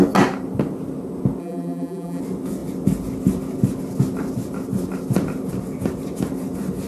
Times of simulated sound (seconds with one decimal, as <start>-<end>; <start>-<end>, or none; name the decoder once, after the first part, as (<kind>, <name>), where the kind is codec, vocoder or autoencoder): 1.4-2.2 (vocoder, BigVGAN v2)